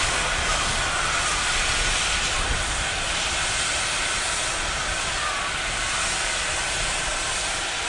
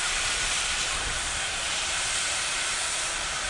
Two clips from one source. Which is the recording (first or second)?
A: first